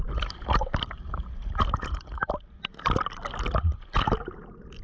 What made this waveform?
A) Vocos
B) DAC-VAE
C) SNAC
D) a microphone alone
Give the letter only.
D